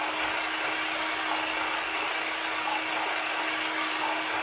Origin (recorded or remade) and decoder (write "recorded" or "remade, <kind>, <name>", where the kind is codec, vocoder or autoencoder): recorded